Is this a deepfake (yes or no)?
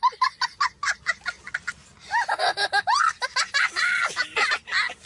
no